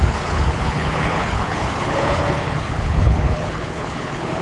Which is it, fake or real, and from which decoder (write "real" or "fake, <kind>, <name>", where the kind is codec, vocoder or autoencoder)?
fake, codec, HILCodec